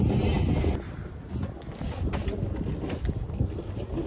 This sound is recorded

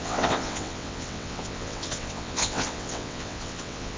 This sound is remade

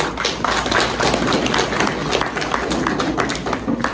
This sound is recorded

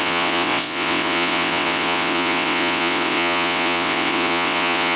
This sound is remade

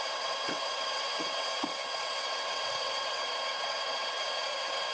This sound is remade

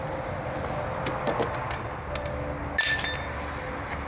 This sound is recorded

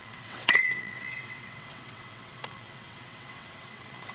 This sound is remade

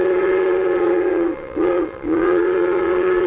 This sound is remade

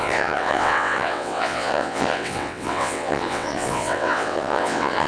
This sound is remade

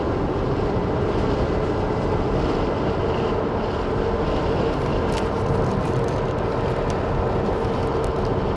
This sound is recorded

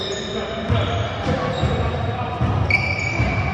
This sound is recorded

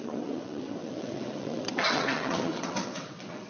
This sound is remade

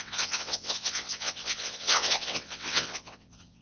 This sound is remade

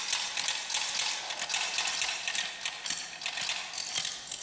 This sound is recorded